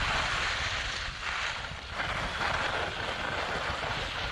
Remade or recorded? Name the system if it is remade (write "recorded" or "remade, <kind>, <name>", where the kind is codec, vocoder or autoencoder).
recorded